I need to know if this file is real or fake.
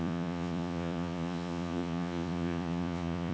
fake